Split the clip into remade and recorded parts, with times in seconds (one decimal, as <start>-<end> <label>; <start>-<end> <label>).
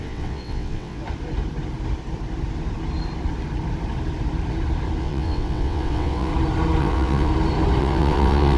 0.0-1.0 remade; 1.0-5.0 recorded; 5.0-6.3 remade; 6.3-6.8 recorded; 6.8-7.3 remade; 7.3-7.8 recorded; 7.8-8.6 remade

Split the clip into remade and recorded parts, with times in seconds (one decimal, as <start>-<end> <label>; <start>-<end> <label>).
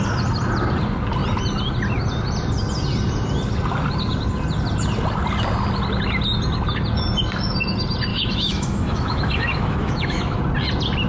0.0-8.1 recorded; 8.1-10.4 remade; 10.4-11.1 recorded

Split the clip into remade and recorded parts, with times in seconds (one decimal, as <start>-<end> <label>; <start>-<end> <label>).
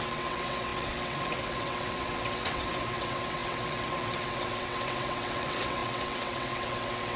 0.0-7.2 remade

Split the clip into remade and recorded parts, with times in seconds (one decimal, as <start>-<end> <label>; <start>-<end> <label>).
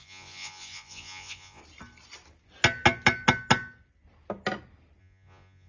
0.0-1.6 remade; 1.6-5.0 recorded; 5.0-5.7 remade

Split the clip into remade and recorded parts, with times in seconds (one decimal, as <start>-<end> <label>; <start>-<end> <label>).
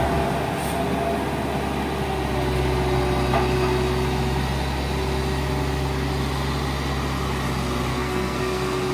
0.0-7.9 recorded; 7.9-8.9 remade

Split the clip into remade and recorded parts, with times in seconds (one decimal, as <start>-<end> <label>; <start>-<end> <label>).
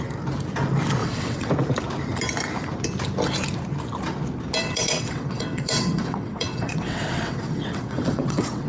0.0-1.0 recorded; 1.0-1.5 remade; 1.5-4.6 recorded; 4.6-8.7 remade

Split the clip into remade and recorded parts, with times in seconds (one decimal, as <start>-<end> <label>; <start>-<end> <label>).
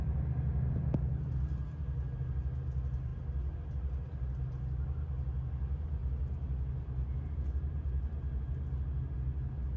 0.0-9.8 recorded